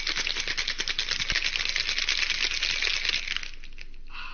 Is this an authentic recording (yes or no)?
yes